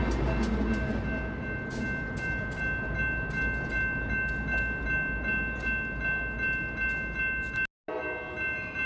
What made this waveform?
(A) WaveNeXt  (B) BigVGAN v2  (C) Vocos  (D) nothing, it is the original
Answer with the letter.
D